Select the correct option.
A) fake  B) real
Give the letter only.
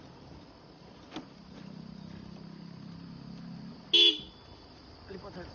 B